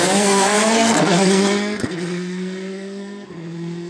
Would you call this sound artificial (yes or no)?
yes